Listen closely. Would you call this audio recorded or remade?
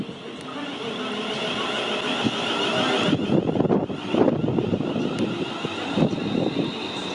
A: recorded